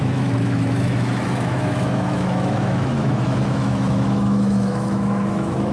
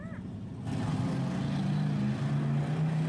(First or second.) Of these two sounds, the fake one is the first